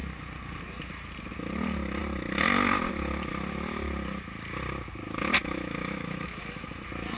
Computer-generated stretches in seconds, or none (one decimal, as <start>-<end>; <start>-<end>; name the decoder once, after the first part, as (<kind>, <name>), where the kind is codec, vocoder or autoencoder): 5.4-6.8 (autoencoder, DAC-VAE)